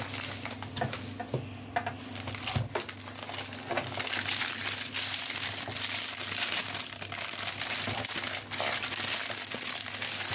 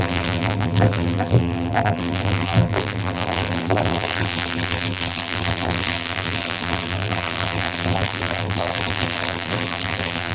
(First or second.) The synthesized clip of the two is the second